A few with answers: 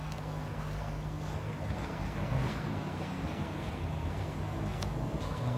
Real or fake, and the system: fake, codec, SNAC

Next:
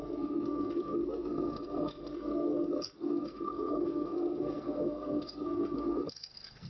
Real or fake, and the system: fake, codec, SNAC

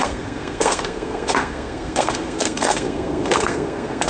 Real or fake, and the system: fake, codec, SNAC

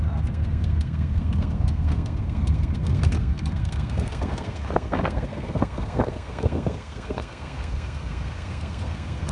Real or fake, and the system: fake, codec, SNAC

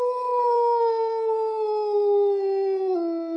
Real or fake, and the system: real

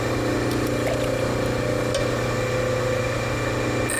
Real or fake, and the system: real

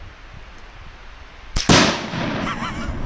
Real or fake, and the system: real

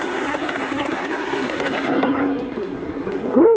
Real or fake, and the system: fake, codec, SNAC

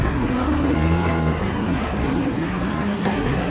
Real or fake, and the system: fake, codec, SNAC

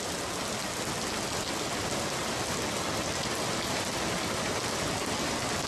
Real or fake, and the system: real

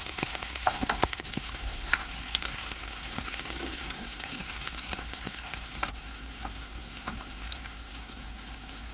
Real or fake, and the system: fake, codec, SNAC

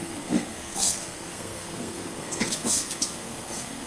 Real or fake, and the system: fake, codec, SNAC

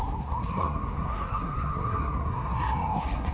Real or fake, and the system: fake, codec, SNAC